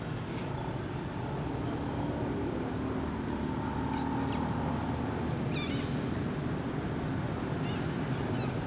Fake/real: real